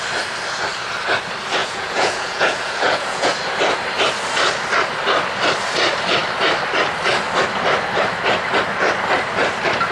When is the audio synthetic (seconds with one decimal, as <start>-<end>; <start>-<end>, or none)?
1.6-3.3